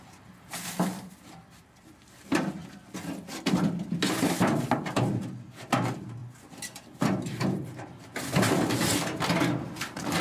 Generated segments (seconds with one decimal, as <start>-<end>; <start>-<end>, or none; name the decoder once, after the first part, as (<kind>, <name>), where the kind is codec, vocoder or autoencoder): none